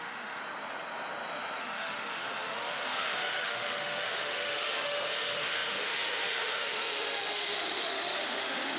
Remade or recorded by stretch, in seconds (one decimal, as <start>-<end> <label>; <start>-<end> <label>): 0.0-0.4 remade; 0.4-1.6 recorded; 1.6-8.8 remade

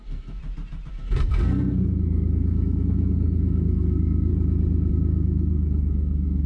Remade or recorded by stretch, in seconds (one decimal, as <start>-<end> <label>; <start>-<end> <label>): 0.0-0.4 remade; 0.4-0.9 recorded; 0.9-4.3 remade; 4.3-4.9 recorded; 4.9-6.5 remade

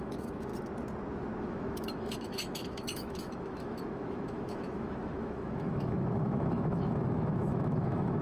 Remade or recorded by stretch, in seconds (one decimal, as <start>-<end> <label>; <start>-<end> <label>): 0.0-0.5 remade; 0.5-1.4 recorded; 1.4-8.2 remade

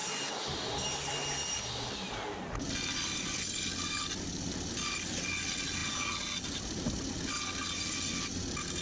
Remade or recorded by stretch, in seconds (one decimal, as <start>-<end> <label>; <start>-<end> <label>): 0.0-8.8 recorded